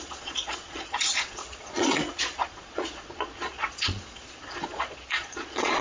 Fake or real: fake